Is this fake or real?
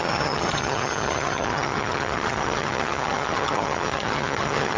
fake